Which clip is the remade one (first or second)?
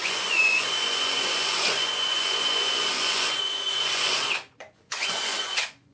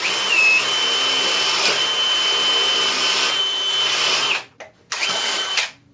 first